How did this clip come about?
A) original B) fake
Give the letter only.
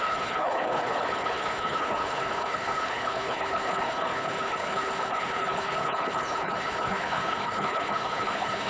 B